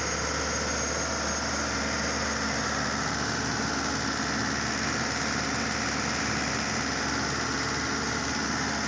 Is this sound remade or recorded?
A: recorded